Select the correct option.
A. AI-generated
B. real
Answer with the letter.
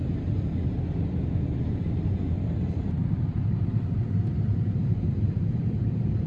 A